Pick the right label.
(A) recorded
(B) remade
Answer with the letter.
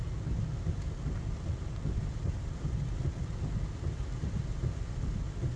A